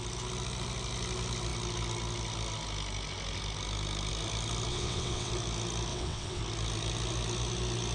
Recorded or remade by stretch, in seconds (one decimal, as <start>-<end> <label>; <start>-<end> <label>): 0.0-4.7 recorded; 4.7-5.3 remade; 5.3-5.9 recorded; 5.9-6.4 remade; 6.4-7.9 recorded